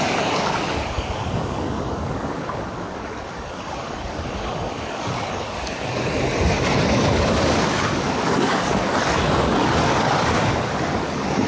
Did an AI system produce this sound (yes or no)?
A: yes